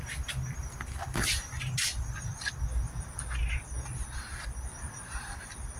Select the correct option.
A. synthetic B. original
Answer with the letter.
B